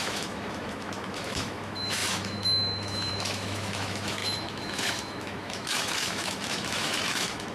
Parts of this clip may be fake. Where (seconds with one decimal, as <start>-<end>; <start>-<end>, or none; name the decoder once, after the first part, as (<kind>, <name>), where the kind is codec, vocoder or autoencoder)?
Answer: 0.0-7.5 (autoencoder, DAC-VAE)

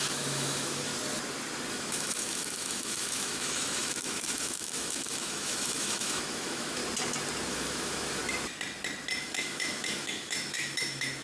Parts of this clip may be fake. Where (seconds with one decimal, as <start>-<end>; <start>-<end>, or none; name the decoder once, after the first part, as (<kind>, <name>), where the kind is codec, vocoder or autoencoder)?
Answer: 0.0-0.9 (autoencoder, DAC-VAE); 1.7-6.8; 7.5-8.2; 9.2-11.2